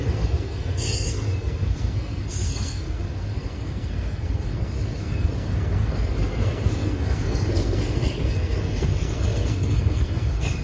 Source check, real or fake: fake